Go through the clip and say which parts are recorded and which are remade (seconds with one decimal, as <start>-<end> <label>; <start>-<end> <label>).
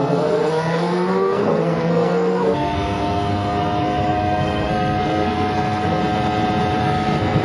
0.0-6.0 remade; 6.0-6.8 recorded; 6.8-7.4 remade